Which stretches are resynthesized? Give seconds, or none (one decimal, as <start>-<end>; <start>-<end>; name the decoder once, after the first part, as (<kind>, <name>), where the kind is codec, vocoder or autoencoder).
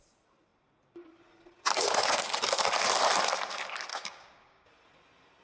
3.9-4.7 (codec, DAC)